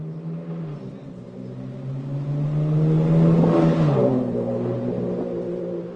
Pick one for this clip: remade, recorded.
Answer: recorded